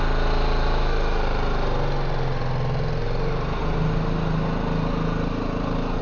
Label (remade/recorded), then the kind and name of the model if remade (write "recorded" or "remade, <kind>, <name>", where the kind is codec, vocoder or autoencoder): recorded